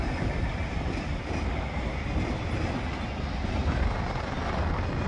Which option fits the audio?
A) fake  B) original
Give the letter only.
B